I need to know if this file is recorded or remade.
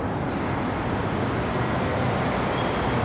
recorded